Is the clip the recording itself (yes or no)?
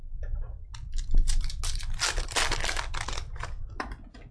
yes